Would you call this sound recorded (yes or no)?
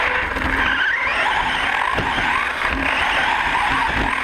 yes